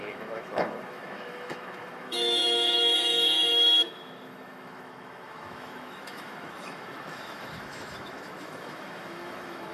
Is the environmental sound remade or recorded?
remade